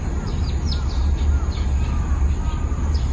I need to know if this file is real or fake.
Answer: real